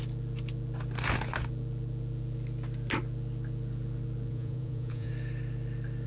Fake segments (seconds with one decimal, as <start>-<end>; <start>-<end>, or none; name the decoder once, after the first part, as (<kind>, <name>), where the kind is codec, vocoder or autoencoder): 4.3-5.1 (vocoder, Vocos)